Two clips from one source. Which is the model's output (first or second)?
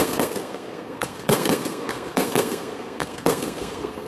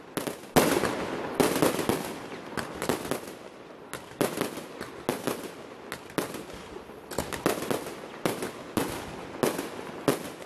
first